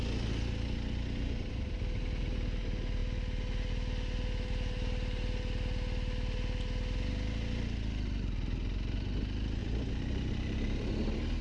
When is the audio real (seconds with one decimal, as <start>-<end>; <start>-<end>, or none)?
0.0-11.4